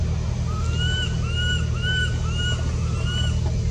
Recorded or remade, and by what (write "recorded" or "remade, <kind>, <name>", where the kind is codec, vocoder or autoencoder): recorded